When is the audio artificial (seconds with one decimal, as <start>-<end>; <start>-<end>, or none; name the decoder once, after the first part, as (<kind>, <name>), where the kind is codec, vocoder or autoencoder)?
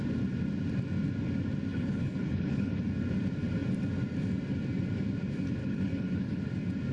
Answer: 1.7-2.8 (codec, HILCodec); 5.6-6.4